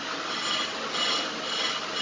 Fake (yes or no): no